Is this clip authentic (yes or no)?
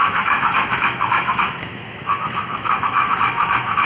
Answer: no